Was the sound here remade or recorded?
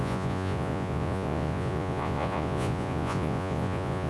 remade